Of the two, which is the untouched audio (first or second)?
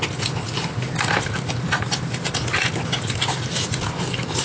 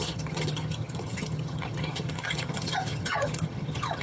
first